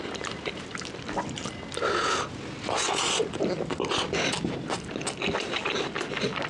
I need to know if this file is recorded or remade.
recorded